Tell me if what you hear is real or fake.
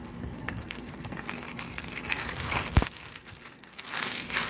fake